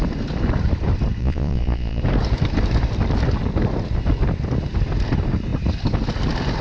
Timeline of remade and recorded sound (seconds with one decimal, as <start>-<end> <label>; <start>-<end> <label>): 0.0-1.2 recorded; 1.2-2.0 remade; 2.0-6.6 recorded